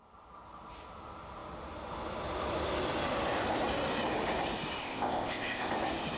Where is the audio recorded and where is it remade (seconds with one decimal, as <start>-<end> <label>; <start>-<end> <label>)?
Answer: 0.0-4.8 recorded; 4.8-5.7 remade; 5.7-6.2 recorded